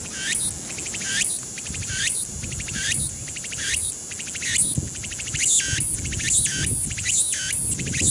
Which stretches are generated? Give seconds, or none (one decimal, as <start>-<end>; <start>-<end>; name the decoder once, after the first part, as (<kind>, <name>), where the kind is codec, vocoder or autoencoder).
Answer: 1.1-4.1 (vocoder, BigVGAN v2)

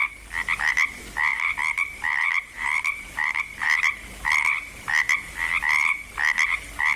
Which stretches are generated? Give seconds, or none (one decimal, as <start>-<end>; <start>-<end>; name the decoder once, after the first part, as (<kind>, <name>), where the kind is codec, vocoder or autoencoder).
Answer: 1.3-3.4 (vocoder, BigVGAN v2)

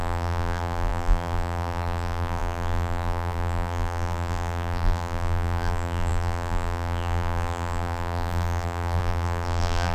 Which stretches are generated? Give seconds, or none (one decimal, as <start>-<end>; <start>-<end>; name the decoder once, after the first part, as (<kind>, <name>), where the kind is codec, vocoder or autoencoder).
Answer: 0.0-9.9 (vocoder, BigVGAN v2)

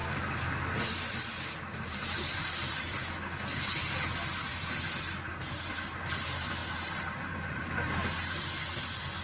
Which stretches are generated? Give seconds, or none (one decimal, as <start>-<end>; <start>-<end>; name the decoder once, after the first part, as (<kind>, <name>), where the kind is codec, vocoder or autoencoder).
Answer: 1.9-2.9 (vocoder, BigVGAN v2); 6.6-7.6

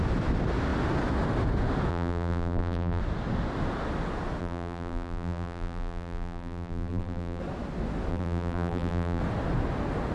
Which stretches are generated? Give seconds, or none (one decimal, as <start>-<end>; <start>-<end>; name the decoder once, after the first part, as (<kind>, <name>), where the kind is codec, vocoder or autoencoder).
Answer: 1.9-3.0 (vocoder, BigVGAN v2); 4.4-7.4; 8.1-9.2

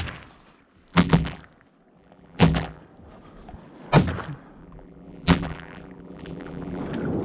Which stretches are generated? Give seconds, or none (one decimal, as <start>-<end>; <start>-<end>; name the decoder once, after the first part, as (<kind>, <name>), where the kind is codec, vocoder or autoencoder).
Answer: 0.9-1.4 (vocoder, BigVGAN v2); 2.0-2.8; 4.6-6.8

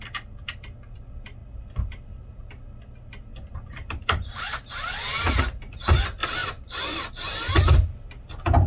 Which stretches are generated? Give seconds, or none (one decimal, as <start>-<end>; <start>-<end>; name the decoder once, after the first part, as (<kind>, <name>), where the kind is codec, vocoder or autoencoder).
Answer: 1.4-2.4 (vocoder, BigVGAN v2); 3.3-5.4; 6.4-7.1